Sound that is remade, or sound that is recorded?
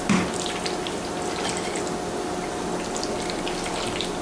recorded